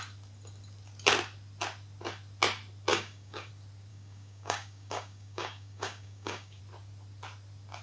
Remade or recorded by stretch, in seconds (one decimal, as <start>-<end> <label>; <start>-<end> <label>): 0.0-2.9 recorded; 2.9-3.5 remade; 3.5-3.9 recorded; 3.9-6.6 remade; 6.6-7.8 recorded